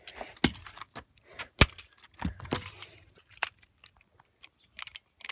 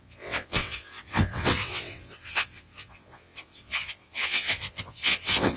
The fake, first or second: second